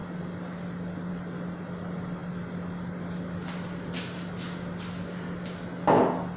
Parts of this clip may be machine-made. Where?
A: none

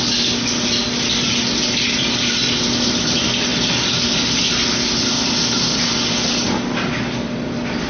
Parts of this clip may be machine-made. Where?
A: none

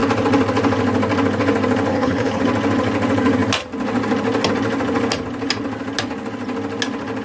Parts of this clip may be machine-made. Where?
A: 1.9-2.4 (codec, HILCodec)

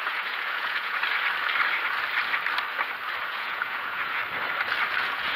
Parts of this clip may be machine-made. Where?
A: 0.0-1.0 (vocoder, Vocos); 3.3-4.2; 5.0-5.4

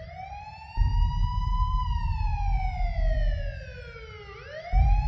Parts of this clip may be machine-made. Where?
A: 0.0-0.9 (vocoder, BigVGAN v2); 1.6-2.3; 4.6-5.1

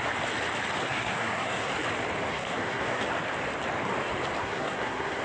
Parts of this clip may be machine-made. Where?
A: 0.8-1.7 (codec, SNAC); 2.3-3.0; 4.4-5.2

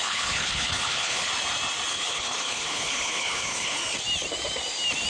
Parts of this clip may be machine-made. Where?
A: 0.0-1.3 (codec, HILCodec); 1.9-3.8

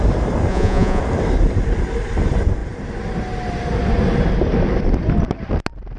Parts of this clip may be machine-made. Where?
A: 0.5-1.0 (vocoder, Vocos)